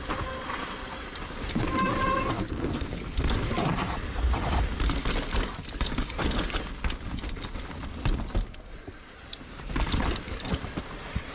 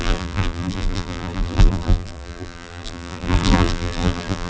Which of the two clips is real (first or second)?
first